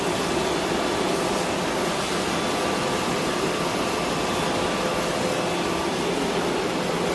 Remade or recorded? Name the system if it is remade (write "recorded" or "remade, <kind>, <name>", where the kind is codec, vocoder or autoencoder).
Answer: recorded